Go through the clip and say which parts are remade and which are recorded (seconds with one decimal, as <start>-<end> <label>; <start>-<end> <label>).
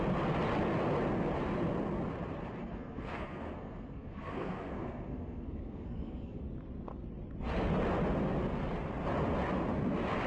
0.0-2.6 recorded; 2.6-6.4 remade; 6.4-10.3 recorded